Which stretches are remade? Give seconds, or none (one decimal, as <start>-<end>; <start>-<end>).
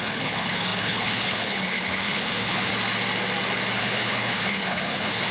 0.0-2.7; 3.8-5.3